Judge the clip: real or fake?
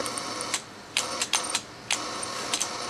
fake